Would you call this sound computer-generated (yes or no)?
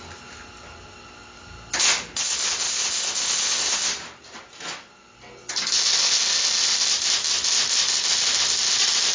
no